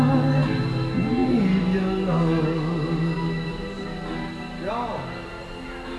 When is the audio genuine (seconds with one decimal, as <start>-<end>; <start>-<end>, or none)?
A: 0.0-6.0